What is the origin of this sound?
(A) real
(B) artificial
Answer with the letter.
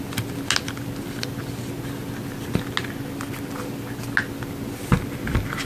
A